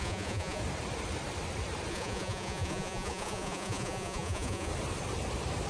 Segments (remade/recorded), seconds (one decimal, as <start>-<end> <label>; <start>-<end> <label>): 0.0-0.6 remade; 0.6-1.9 recorded; 1.9-4.7 remade; 4.7-5.7 recorded